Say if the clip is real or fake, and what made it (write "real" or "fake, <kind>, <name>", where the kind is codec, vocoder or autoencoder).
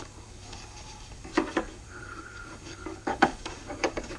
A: fake, codec, DAC